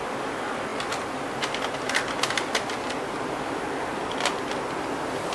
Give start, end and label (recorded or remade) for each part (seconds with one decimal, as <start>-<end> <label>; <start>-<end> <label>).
0.0-5.3 recorded